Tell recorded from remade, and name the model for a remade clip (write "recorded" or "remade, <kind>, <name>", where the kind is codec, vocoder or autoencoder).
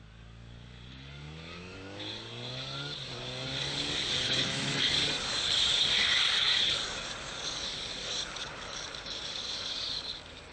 remade, codec, DAC